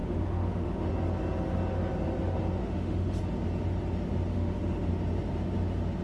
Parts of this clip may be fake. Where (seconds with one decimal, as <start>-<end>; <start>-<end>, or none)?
0.0-0.9; 2.6-3.2; 4.3-4.9